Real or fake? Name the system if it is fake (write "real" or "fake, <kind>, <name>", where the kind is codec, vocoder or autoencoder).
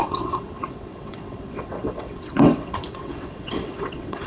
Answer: fake, vocoder, WaveNeXt